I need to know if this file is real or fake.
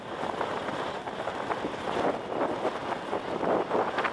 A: real